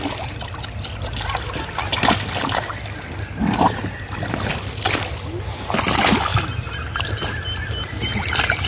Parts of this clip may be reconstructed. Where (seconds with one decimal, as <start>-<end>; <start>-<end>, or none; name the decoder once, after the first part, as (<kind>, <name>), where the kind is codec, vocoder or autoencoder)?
none

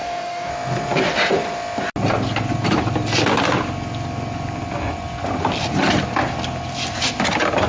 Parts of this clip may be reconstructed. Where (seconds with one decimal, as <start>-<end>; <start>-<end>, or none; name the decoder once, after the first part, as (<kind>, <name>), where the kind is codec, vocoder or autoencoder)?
0.0-0.5 (codec, DAC)

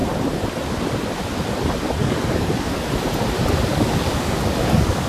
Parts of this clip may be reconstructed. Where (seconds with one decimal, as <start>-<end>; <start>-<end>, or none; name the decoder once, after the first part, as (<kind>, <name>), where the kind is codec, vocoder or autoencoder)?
2.0-2.8 (codec, DAC); 3.7-5.1

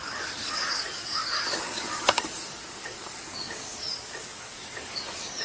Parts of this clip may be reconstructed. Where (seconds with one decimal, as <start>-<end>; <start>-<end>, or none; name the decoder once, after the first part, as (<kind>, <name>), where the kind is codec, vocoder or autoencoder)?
0.0-5.4 (codec, DAC)

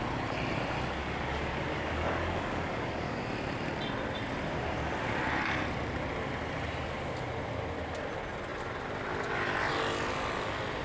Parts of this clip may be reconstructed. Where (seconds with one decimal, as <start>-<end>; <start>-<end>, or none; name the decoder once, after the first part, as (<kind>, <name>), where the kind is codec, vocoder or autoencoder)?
1.0-3.2 (codec, DAC)

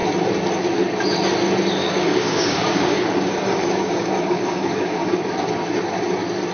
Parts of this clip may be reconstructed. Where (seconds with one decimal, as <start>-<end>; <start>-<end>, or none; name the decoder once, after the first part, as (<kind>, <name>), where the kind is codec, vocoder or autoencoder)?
1.8-5.2 (codec, DAC)

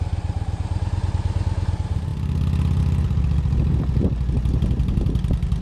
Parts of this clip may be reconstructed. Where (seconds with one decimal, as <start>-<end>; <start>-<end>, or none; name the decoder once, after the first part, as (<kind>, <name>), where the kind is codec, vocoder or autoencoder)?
none

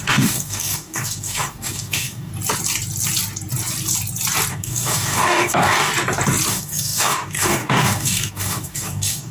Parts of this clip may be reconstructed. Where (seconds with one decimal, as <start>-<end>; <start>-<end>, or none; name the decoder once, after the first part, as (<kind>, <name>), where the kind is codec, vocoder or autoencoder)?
0.0-2.3 (codec, DAC); 4.5-5.9; 6.5-9.3